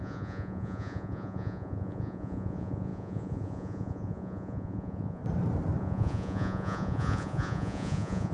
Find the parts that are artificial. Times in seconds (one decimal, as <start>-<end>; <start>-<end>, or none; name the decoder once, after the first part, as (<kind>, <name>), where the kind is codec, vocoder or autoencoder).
0.0-5.2 (vocoder, Vocos); 5.8-8.3